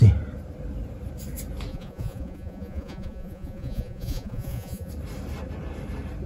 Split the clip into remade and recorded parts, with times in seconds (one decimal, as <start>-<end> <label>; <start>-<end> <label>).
0.0-1.7 recorded; 1.7-4.9 remade; 4.9-6.3 recorded